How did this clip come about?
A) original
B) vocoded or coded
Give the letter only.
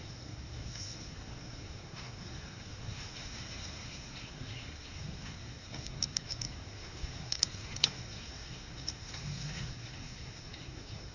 B